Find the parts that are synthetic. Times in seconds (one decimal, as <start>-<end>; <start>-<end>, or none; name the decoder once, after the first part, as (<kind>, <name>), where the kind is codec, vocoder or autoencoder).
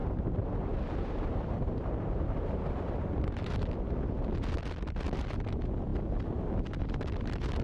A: 0.0-3.5 (vocoder, BigVGAN v2)